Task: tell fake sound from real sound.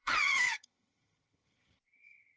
fake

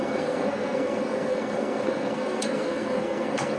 fake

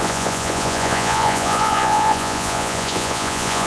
fake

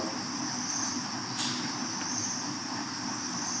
real